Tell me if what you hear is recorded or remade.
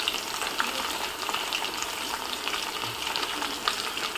recorded